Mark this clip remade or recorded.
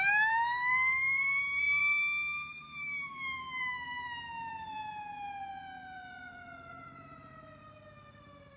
remade